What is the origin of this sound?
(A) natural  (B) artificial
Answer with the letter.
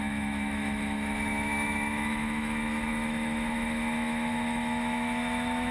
B